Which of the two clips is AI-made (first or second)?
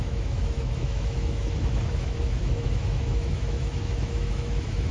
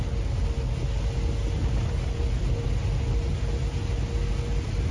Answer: first